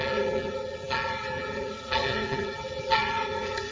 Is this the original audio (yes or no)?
no